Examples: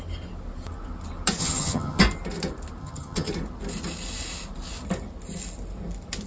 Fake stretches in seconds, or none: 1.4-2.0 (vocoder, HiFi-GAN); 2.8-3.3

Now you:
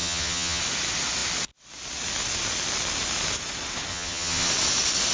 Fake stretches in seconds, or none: 0.0-0.6 (vocoder, HiFi-GAN); 3.9-4.5

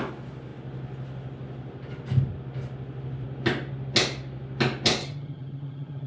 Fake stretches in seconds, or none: 5.0-6.1 (vocoder, HiFi-GAN)